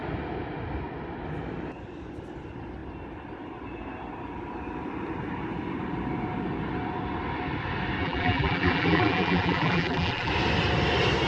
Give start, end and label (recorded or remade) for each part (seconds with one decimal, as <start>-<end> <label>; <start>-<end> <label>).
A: 0.0-8.0 recorded; 8.0-10.3 remade; 10.3-11.3 recorded